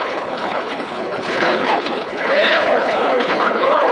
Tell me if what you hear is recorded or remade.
remade